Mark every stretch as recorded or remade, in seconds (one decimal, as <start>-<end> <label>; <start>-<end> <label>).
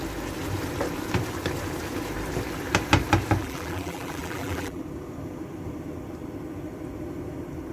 0.0-3.4 recorded; 3.4-4.8 remade; 4.8-7.7 recorded